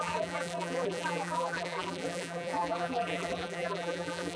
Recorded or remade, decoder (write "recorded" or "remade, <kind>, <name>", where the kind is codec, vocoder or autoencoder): remade, vocoder, BigVGAN v2